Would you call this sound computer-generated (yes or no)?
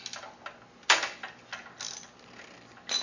no